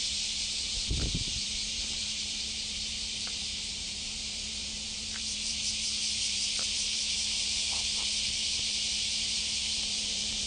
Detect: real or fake fake